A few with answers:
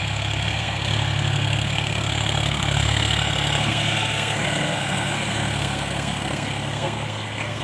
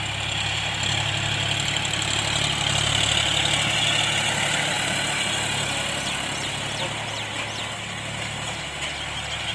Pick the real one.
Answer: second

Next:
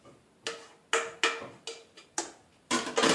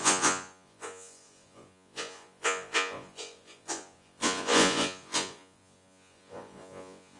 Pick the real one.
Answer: first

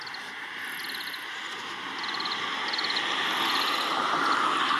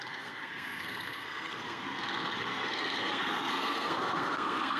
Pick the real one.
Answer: first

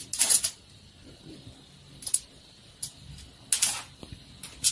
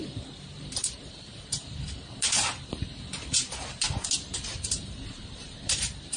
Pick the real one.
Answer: first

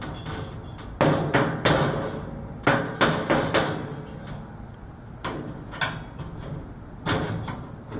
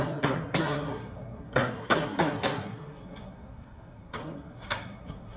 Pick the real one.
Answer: first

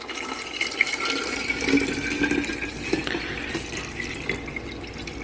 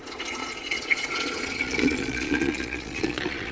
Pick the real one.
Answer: first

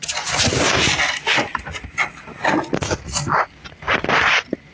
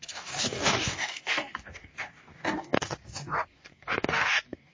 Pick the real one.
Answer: first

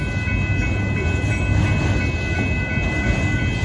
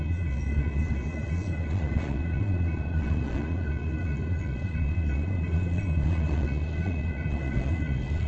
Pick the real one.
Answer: first